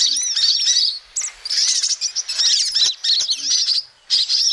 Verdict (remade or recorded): recorded